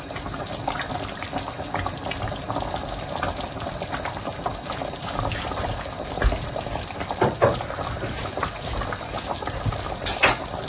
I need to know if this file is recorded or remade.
recorded